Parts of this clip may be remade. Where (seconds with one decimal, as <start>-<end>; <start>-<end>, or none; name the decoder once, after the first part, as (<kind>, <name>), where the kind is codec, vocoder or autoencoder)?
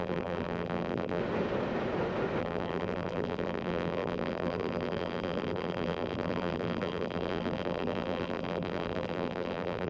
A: 0.0-1.2 (vocoder, BigVGAN v2); 2.4-9.9